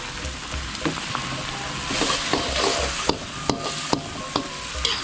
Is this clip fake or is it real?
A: real